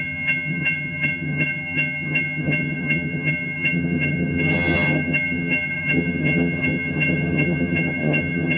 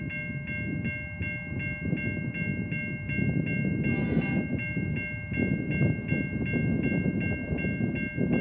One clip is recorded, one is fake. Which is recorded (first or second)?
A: second